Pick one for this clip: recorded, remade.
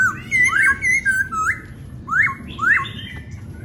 recorded